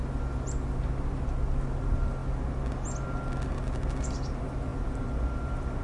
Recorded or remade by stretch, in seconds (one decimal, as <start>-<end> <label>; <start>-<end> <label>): 0.0-5.8 recorded